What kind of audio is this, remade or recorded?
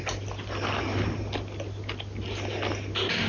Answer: recorded